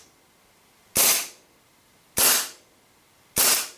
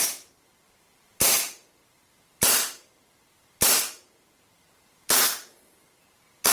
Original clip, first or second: first